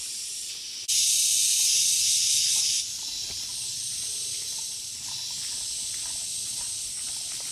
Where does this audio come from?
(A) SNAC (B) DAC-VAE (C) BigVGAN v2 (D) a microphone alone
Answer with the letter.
D